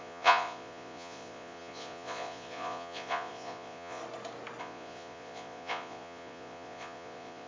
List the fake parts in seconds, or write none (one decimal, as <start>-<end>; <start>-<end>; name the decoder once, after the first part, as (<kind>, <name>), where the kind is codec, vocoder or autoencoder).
0.0-4.0 (vocoder, Vocos); 4.6-7.5